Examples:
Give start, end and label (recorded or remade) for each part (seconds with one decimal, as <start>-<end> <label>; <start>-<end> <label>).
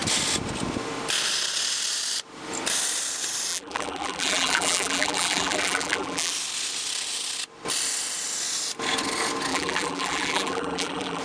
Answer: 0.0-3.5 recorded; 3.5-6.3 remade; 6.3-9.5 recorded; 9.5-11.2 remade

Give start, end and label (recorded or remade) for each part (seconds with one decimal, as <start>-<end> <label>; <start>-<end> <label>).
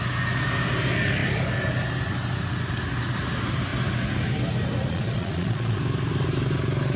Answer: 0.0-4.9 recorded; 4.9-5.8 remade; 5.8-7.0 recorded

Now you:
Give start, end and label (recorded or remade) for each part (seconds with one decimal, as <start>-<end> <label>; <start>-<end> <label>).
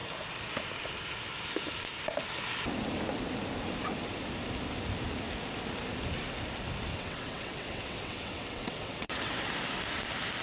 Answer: 0.0-6.9 recorded; 6.9-9.5 remade; 9.5-10.4 recorded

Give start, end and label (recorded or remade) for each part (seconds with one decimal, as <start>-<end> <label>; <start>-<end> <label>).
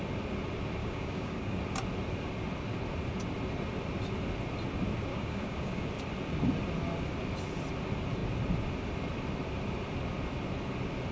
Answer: 0.0-0.8 recorded; 0.8-1.6 remade; 1.6-5.1 recorded; 5.1-5.9 remade; 5.9-11.1 recorded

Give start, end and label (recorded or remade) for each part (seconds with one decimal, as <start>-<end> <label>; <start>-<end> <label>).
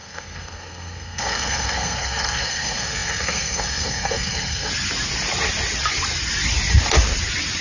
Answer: 0.0-4.7 remade; 4.7-7.6 recorded